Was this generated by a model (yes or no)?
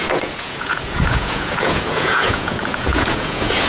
yes